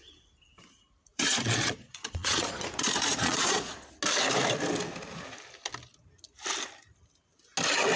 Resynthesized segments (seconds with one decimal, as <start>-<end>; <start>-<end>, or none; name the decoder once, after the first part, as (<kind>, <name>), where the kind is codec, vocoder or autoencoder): 1.1-3.9 (vocoder, Vocos)